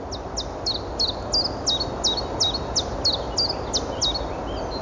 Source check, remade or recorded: recorded